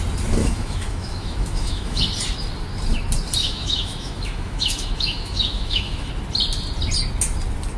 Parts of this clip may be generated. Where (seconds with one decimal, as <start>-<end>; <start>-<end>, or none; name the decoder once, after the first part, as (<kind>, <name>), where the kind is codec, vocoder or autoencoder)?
0.4-2.0 (autoencoder, DAC-VAE); 3.4-6.1